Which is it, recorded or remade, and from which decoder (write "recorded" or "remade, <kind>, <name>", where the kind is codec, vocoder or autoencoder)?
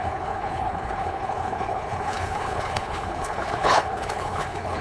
remade, codec, HILCodec